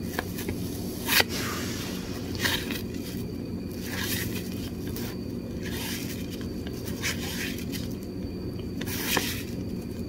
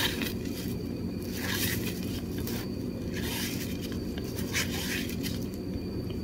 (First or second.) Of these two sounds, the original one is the first